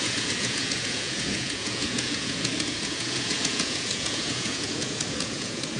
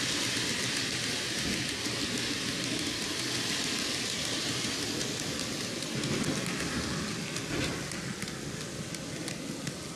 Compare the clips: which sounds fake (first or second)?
first